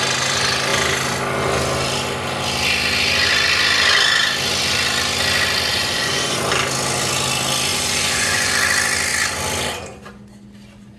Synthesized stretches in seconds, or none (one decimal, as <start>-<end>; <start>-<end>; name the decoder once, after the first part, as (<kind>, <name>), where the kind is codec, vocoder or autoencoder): 5.7-6.4 (vocoder, Vocos); 7.7-8.5

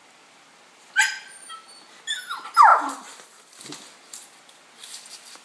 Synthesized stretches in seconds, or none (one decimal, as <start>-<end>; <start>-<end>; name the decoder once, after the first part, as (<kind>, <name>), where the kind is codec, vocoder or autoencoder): none

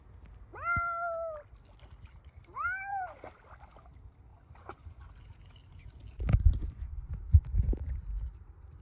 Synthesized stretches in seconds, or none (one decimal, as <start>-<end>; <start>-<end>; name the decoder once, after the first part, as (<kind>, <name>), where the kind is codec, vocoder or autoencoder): 4.3-5.1 (vocoder, Vocos); 6.3-7.1